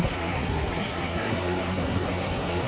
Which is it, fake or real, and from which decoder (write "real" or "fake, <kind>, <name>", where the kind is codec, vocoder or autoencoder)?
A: fake, codec, SNAC